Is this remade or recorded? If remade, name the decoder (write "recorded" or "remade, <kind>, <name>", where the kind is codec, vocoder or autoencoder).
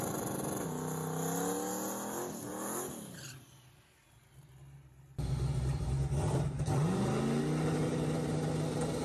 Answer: recorded